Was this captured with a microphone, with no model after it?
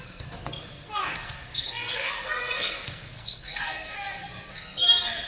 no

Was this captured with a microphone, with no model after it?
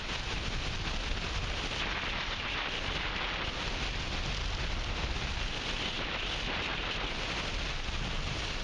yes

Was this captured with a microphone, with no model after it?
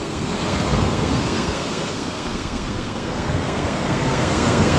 no